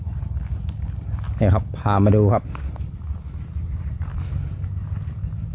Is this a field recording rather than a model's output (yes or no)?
yes